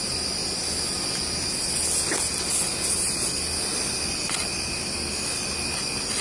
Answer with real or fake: real